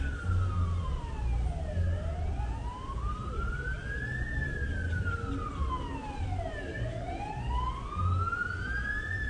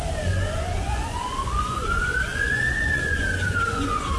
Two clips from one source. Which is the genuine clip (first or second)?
first